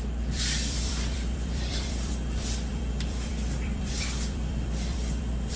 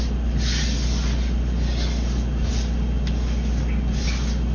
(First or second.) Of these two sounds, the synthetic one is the first